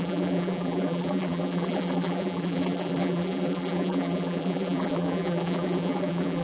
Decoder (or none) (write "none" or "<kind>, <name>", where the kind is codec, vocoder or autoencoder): vocoder, BigVGAN v2